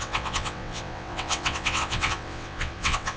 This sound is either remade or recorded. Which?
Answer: remade